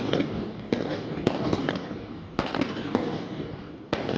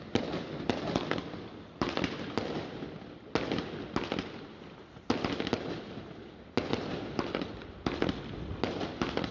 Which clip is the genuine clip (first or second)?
second